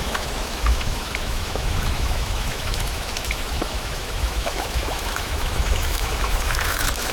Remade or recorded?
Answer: remade